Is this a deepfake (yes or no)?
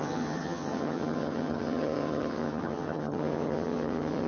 yes